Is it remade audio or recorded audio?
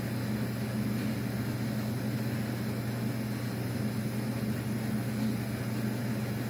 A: recorded